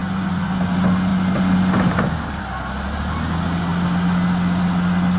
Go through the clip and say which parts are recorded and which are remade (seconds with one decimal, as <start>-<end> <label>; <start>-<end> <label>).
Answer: 0.0-0.6 remade; 0.6-5.2 recorded